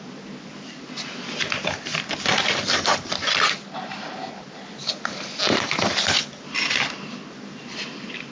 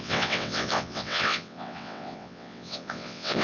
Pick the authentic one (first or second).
first